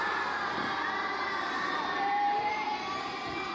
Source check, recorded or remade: remade